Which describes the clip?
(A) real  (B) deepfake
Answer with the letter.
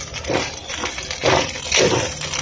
A